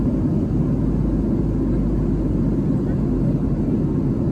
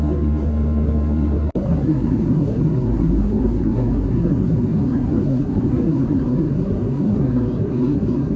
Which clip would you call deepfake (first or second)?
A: second